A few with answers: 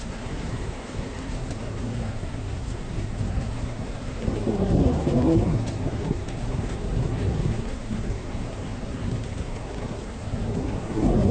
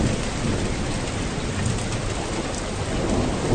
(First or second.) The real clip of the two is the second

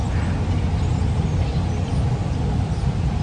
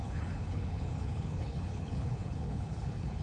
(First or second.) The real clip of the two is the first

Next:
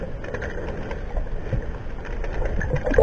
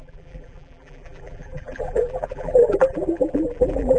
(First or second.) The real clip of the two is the first